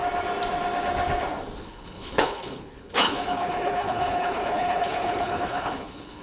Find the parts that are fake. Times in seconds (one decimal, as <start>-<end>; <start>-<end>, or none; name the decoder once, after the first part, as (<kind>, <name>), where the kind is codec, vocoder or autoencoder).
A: 1.6-6.2 (codec, HILCodec)

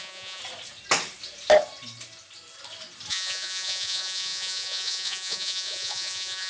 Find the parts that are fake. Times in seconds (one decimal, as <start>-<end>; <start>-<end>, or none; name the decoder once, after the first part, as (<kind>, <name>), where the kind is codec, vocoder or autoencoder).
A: 0.0-0.4 (vocoder, Vocos); 3.1-6.5